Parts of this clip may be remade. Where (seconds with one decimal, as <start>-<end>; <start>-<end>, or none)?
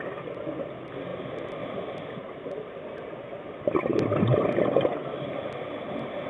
none